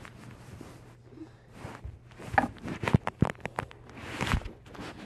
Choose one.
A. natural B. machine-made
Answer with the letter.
A